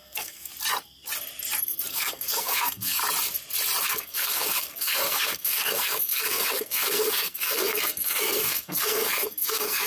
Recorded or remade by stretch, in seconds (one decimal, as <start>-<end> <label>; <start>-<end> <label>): 0.0-0.5 remade; 0.5-1.9 recorded; 1.9-3.0 remade; 3.0-3.8 recorded; 3.8-9.9 remade

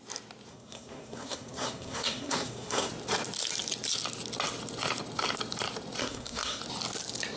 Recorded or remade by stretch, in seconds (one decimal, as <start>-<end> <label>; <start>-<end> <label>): 0.0-0.5 recorded; 0.5-2.9 remade; 2.9-6.0 recorded; 6.0-6.6 remade; 6.6-7.4 recorded

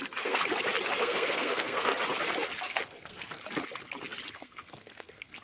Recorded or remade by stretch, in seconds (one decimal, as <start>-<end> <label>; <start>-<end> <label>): 0.0-0.4 remade; 0.4-1.0 recorded; 1.0-1.9 remade; 1.9-2.6 recorded; 2.6-3.4 remade; 3.4-4.3 recorded; 4.3-5.4 remade

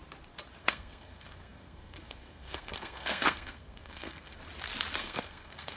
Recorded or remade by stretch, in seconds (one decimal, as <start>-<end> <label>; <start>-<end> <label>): 0.0-0.6 recorded; 0.6-4.4 remade; 4.4-5.0 recorded; 5.0-5.8 remade

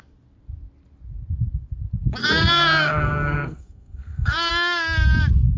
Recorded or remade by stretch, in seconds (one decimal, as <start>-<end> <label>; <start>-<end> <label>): 0.0-2.2 recorded; 2.2-4.5 remade; 4.5-5.6 recorded

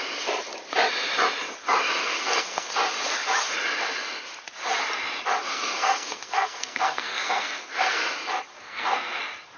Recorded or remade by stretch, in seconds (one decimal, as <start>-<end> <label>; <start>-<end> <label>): 0.0-2.0 recorded; 2.0-2.7 remade; 2.7-5.5 recorded; 5.5-8.0 remade; 8.0-8.6 recorded; 8.6-9.2 remade; 9.2-9.6 recorded

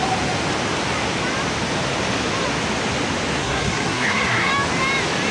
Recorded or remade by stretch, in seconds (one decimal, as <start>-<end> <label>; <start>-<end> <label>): 0.0-3.4 recorded; 3.4-4.5 remade; 4.5-5.3 recorded